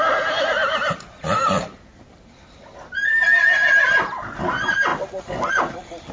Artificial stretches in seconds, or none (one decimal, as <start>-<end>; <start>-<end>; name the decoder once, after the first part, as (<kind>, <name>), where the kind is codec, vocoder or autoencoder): 0.7-2.7 (vocoder, BigVGAN v2)